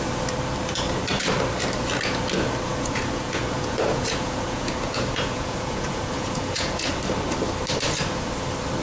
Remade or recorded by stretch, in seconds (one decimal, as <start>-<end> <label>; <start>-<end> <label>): 0.0-2.7 recorded; 2.7-6.9 remade; 6.9-8.8 recorded